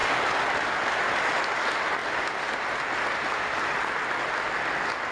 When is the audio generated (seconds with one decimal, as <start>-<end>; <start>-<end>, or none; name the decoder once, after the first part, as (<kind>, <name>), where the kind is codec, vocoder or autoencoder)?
none